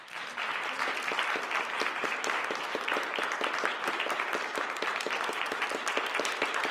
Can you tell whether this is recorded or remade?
recorded